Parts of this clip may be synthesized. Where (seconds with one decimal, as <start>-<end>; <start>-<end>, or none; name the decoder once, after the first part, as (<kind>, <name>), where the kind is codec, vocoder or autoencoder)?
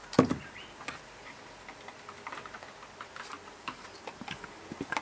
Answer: 0.0-3.0 (vocoder, BigVGAN v2)